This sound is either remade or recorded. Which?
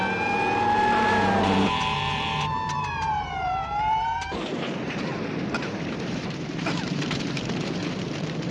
remade